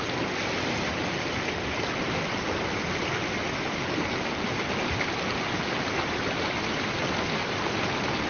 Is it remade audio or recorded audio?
recorded